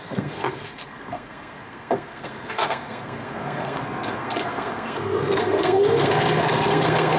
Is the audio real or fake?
fake